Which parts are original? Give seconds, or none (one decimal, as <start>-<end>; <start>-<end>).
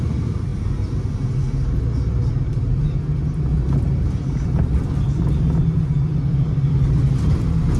0.0-7.8